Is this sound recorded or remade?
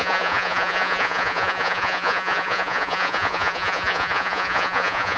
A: remade